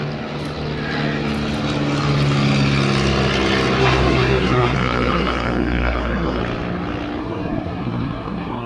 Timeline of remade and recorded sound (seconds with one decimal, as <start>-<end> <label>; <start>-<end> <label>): 0.0-3.8 recorded; 3.8-6.4 remade; 6.4-7.2 recorded; 7.2-8.7 remade